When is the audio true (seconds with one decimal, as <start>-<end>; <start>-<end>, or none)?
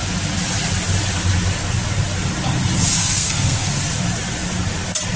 0.0-3.0; 3.7-5.2